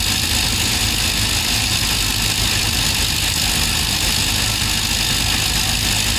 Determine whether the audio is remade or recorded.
recorded